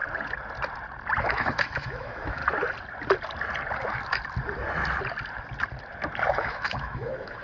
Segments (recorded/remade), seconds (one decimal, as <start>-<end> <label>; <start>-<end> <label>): 0.0-1.2 recorded; 1.2-2.4 remade; 2.4-6.3 recorded; 6.3-7.4 remade